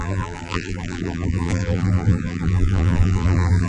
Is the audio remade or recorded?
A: remade